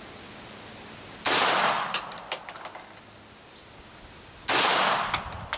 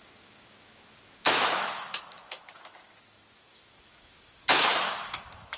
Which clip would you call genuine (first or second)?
first